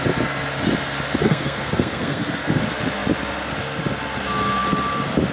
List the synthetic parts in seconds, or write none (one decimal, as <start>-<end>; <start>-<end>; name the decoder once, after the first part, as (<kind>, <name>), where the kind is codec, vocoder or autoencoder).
1.2-2.6 (codec, SNAC)